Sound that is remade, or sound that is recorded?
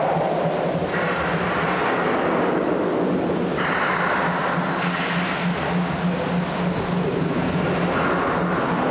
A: recorded